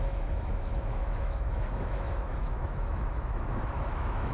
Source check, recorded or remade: remade